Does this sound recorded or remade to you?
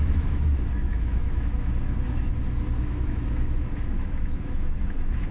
remade